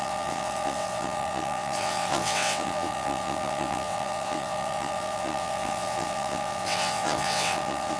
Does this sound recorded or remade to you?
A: remade